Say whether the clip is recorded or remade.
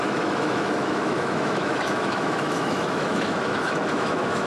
remade